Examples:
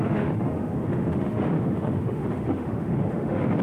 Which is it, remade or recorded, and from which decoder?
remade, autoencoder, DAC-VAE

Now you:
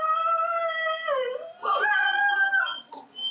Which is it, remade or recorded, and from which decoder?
recorded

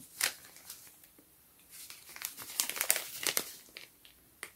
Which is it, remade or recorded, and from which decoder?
recorded